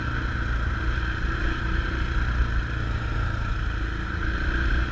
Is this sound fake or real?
real